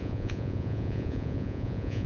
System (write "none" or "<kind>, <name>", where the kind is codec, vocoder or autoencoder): vocoder, Vocos